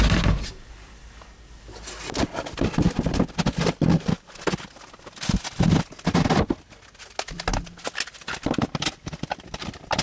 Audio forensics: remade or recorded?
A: recorded